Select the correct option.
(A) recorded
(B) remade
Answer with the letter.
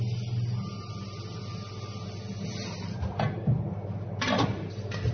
A